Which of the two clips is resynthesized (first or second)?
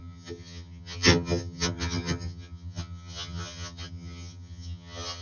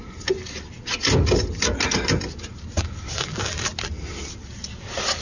first